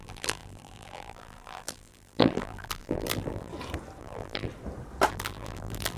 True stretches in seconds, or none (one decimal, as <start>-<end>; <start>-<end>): 3.5-4.0; 4.5-5.1